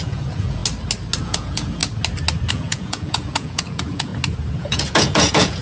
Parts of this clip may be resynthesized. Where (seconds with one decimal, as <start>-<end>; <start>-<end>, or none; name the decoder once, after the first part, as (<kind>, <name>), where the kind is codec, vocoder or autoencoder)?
0.0-0.6 (vocoder, Vocos); 1.2-1.8; 2.5-4.1; 4.6-5.6

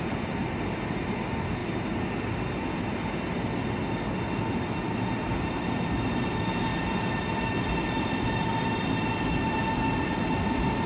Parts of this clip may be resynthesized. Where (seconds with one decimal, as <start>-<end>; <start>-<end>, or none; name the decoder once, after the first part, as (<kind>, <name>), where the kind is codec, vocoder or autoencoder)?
none

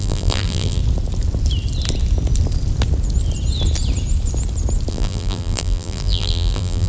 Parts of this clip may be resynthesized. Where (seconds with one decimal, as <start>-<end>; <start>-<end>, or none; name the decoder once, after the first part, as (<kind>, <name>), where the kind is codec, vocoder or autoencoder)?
0.0-0.8 (vocoder, BigVGAN v2); 4.9-6.9

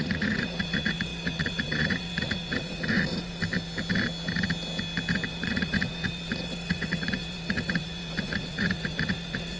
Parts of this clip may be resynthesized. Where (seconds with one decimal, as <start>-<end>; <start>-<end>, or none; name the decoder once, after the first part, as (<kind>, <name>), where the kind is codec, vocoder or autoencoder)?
0.0-3.4 (vocoder, Vocos); 5.3-9.6

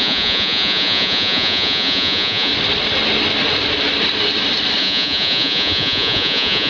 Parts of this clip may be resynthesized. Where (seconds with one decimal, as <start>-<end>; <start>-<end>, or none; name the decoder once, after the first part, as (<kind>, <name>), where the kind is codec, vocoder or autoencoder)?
0.0-2.5 (vocoder, Vocos); 4.8-6.7

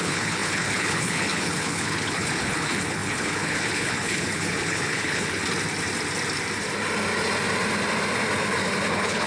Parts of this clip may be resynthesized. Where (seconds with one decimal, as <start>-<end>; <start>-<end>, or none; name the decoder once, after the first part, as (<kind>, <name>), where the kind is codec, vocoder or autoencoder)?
0.0-5.4 (codec, HILCodec); 8.9-9.3

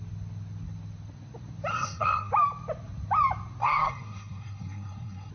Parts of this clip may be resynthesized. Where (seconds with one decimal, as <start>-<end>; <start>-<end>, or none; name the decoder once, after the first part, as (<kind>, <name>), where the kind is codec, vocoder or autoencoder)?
1.7-2.3 (codec, SNAC); 3.6-5.3

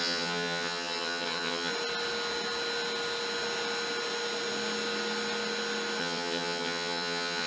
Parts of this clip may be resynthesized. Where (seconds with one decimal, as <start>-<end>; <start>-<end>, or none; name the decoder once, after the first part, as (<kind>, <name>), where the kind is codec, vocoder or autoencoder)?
0.0-1.7 (vocoder, HiFi-GAN); 6.0-7.5